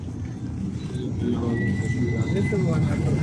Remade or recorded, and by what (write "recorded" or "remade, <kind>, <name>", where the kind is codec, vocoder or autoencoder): recorded